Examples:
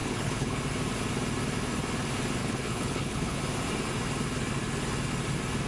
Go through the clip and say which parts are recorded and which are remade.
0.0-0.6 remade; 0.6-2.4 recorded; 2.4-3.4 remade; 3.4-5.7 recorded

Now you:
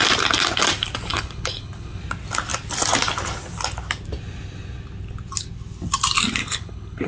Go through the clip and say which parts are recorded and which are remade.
0.0-1.1 recorded; 1.1-2.0 remade; 2.0-6.4 recorded; 6.4-7.1 remade

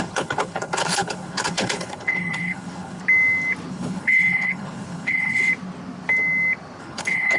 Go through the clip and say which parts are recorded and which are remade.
0.0-3.0 remade; 3.0-3.7 recorded; 3.7-5.5 remade; 5.5-6.8 recorded; 6.8-7.4 remade

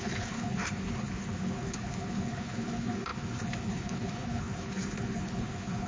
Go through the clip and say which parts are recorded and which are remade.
0.0-5.9 remade